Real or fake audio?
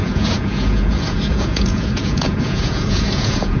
fake